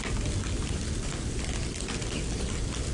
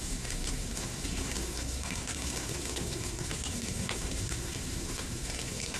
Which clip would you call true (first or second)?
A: first